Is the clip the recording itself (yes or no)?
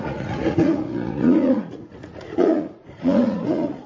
no